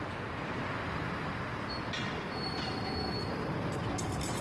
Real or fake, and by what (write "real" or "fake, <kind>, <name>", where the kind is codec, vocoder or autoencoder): real